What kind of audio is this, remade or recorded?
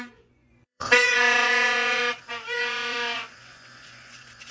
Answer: remade